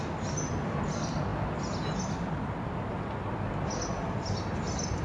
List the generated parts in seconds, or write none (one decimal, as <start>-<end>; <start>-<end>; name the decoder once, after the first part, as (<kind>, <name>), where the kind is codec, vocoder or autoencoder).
none